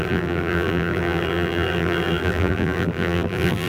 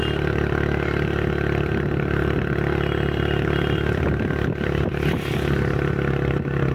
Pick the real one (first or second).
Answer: second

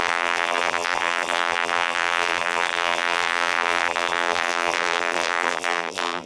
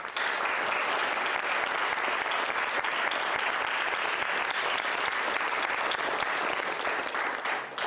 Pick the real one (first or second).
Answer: second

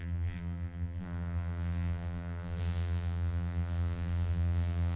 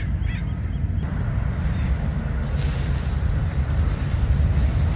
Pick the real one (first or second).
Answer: second